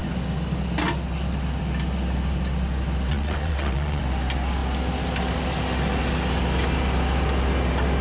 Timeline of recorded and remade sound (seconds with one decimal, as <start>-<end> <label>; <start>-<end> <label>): 0.0-3.1 recorded; 3.1-4.0 remade; 4.0-8.0 recorded